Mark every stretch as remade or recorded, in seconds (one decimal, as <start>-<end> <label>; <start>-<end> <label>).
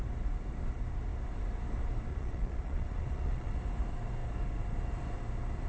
0.0-2.1 recorded; 2.1-3.6 remade; 3.6-5.7 recorded